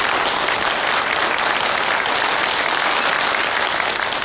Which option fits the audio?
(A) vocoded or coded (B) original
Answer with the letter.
B